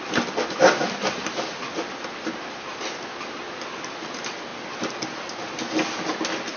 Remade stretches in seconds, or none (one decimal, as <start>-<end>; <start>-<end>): none